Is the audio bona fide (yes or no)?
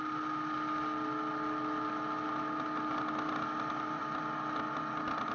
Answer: yes